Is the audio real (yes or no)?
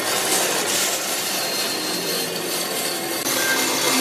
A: yes